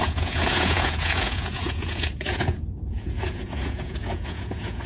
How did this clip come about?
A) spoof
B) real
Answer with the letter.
A